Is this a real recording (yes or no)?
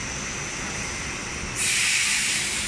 yes